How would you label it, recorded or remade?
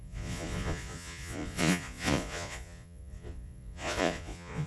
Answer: remade